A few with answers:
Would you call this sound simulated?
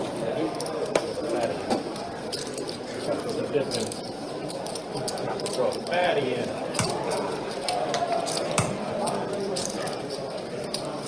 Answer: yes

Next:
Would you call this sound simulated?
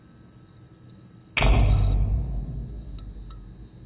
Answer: no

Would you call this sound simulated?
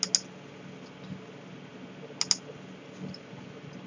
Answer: no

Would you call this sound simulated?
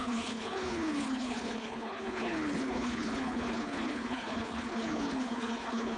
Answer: yes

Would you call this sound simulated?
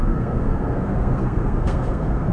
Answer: yes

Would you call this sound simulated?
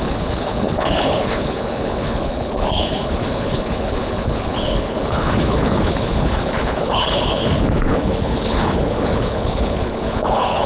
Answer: yes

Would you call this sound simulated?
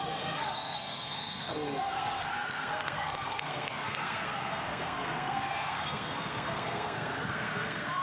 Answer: yes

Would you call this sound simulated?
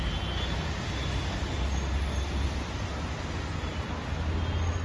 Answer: no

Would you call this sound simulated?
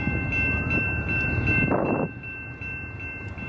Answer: no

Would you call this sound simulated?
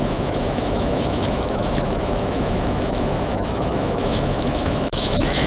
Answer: yes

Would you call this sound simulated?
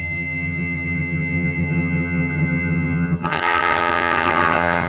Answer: yes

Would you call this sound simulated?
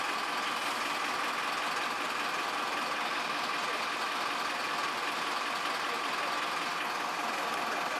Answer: no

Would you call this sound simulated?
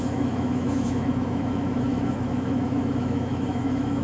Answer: yes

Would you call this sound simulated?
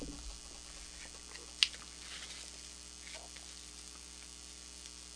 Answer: no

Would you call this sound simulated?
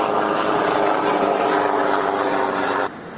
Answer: no